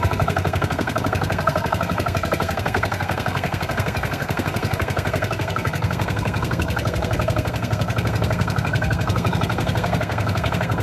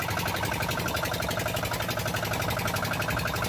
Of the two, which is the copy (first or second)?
first